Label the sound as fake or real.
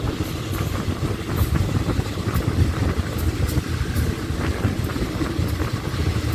real